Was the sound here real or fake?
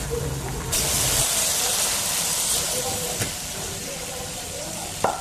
fake